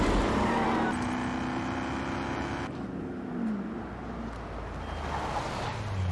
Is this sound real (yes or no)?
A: yes